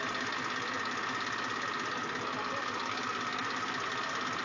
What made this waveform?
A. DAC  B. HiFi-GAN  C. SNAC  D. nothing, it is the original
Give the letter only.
D